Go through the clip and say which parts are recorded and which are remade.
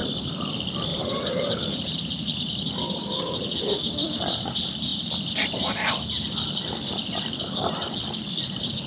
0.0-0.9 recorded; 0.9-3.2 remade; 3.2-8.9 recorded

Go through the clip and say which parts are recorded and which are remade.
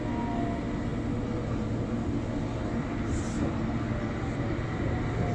0.0-5.3 recorded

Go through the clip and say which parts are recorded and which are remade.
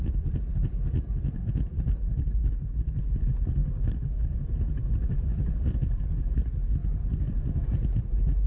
0.0-3.6 remade; 3.6-4.9 recorded; 4.9-6.8 remade; 6.8-8.5 recorded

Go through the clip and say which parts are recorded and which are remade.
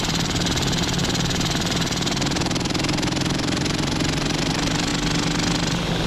0.0-4.9 remade; 4.9-6.1 recorded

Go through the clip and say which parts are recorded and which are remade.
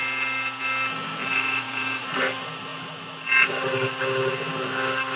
0.0-1.2 recorded; 1.2-2.2 remade; 2.2-5.2 recorded